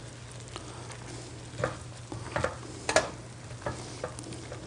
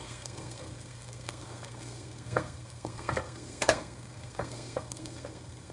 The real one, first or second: first